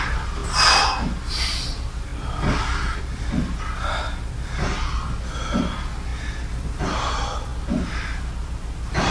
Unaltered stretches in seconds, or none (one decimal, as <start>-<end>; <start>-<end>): 0.0-9.1